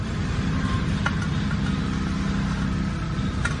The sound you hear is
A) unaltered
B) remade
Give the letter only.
A